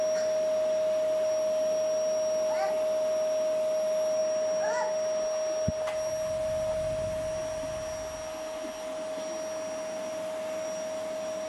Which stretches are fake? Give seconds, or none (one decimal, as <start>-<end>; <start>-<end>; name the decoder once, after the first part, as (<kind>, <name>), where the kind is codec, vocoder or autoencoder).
none